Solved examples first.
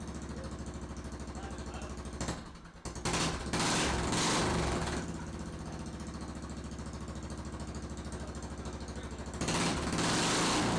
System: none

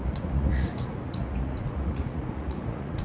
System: vocoder, Vocos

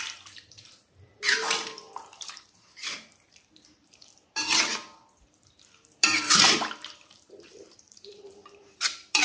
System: vocoder, BigVGAN v2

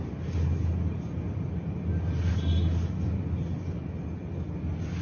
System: none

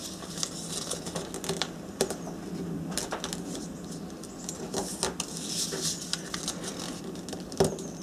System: none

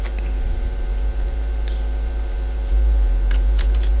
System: vocoder, BigVGAN v2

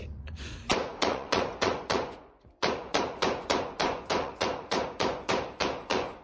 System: vocoder, Vocos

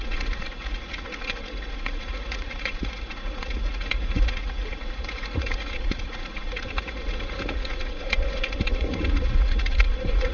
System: vocoder, Vocos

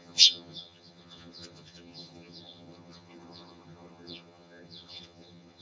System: vocoder, HiFi-GAN